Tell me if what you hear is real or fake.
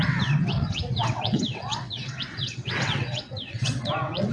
fake